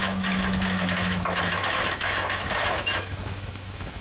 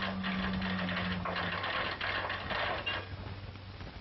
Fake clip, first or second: first